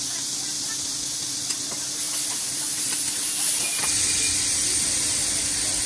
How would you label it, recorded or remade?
recorded